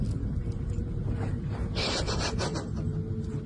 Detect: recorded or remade recorded